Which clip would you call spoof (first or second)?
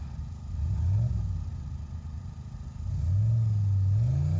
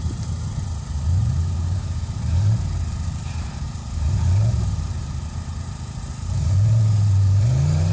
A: second